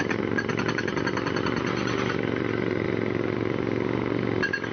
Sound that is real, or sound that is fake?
real